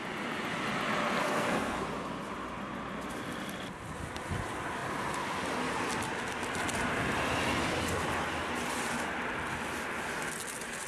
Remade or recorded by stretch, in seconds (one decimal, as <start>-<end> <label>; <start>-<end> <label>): 0.0-1.2 recorded; 1.2-1.8 remade; 1.8-10.9 recorded